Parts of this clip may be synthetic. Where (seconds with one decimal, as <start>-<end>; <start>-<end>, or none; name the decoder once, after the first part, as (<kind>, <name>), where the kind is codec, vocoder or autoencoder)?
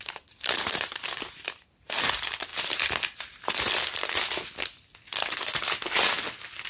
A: 0.0-2.5 (vocoder, BigVGAN v2)